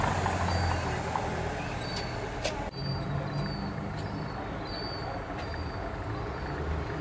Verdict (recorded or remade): recorded